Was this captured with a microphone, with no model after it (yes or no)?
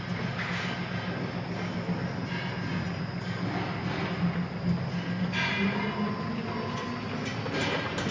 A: yes